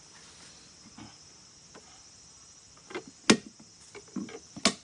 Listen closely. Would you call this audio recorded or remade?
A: recorded